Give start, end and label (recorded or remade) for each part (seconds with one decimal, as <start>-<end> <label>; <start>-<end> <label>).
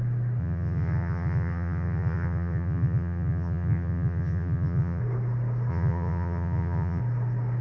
0.0-0.4 recorded; 0.4-5.0 remade; 5.0-5.7 recorded; 5.7-7.0 remade; 7.0-7.6 recorded